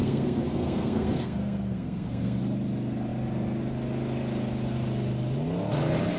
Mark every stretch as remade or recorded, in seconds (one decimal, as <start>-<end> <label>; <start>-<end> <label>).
0.0-2.4 remade; 2.4-6.2 recorded